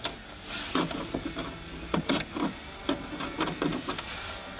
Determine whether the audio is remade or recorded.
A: recorded